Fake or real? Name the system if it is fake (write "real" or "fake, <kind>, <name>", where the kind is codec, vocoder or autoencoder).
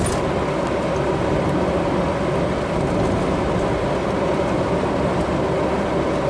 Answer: real